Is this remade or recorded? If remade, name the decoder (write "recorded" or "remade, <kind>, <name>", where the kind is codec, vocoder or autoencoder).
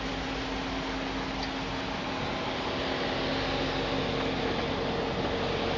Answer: recorded